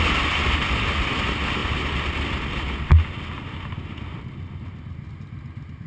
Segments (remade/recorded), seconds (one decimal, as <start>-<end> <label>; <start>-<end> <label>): 0.0-5.9 recorded